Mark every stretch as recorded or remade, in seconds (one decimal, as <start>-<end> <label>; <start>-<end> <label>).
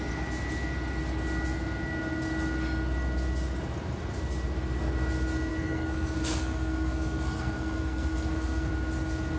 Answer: 0.0-5.5 recorded; 5.5-8.7 remade; 8.7-9.4 recorded